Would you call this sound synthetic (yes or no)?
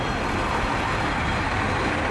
no